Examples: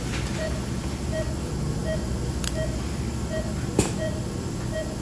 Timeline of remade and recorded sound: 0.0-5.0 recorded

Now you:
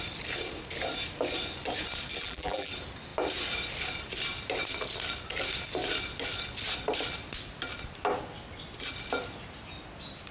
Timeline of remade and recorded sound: 0.0-2.2 recorded; 2.2-2.7 remade; 2.7-10.3 recorded